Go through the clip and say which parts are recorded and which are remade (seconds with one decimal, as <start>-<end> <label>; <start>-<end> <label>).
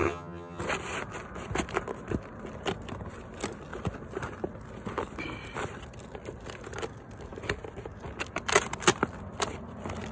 0.0-0.6 remade; 0.6-10.1 recorded